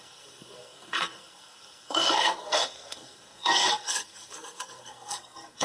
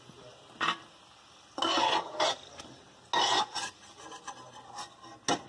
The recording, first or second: second